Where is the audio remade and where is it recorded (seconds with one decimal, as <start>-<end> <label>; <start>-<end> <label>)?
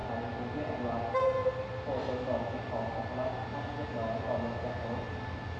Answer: 0.0-5.6 recorded